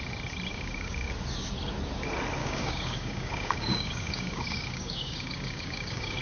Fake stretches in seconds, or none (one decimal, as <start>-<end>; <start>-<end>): 0.5-1.1; 2.4-6.2